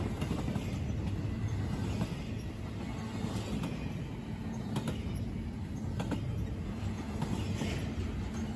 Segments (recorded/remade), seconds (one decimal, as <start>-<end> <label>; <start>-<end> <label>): 0.0-8.6 recorded

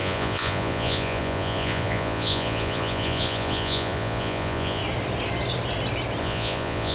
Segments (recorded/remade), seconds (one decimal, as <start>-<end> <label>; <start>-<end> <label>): 0.0-4.8 remade; 4.8-6.2 recorded; 6.2-6.9 remade

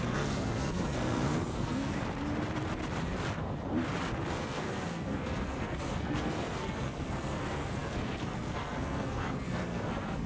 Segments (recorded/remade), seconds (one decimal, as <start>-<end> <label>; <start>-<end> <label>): 0.0-1.9 remade; 1.9-4.3 recorded; 4.3-10.3 remade

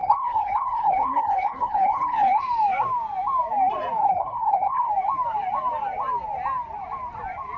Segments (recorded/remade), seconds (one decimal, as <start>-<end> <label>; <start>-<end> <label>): 0.0-2.4 remade; 2.4-4.0 recorded; 4.0-4.9 remade; 4.9-7.6 recorded

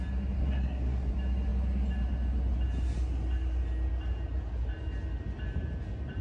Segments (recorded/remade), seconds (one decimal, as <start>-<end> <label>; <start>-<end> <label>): 0.0-0.4 recorded; 0.4-1.1 remade; 1.1-6.2 recorded